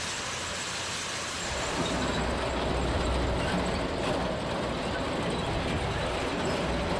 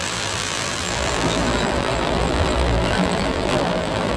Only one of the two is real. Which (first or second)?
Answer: first